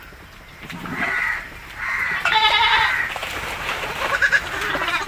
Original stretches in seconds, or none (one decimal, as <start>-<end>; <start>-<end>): none